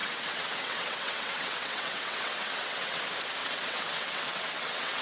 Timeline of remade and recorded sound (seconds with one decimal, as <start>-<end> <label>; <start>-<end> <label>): 0.0-3.0 remade; 3.0-3.4 recorded; 3.4-5.0 remade